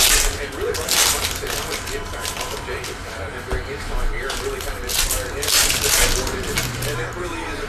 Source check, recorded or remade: recorded